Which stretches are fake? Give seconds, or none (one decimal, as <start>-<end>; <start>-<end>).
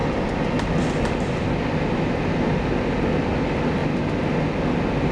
none